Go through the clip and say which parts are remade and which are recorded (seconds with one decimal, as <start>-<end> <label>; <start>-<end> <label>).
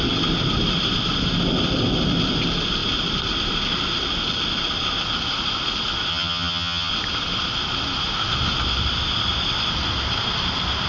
0.0-6.1 recorded; 6.1-6.9 remade; 6.9-10.9 recorded